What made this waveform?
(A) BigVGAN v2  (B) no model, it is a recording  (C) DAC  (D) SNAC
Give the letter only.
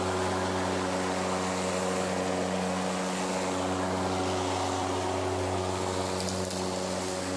B